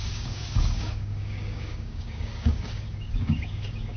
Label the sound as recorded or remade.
remade